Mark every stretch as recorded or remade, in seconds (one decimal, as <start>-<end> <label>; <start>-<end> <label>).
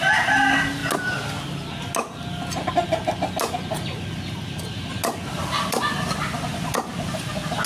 0.0-7.7 recorded